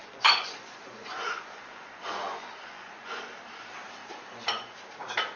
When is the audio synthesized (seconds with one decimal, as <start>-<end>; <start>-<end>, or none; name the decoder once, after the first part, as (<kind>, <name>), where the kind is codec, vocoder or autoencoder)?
0.0-3.2 (vocoder, Vocos); 4.0-4.8